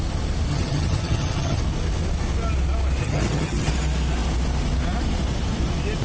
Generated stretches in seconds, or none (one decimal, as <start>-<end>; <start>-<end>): 0.5-1.6; 3.0-3.7